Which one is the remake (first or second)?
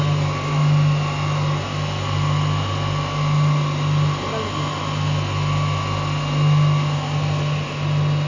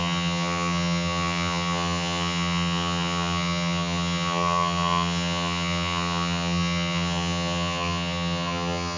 second